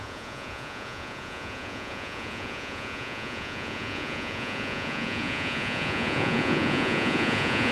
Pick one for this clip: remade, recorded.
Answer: remade